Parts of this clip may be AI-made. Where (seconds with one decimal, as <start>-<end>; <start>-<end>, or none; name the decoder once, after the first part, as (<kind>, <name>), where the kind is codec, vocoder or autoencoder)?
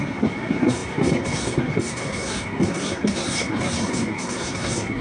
0.0-5.0 (codec, SNAC)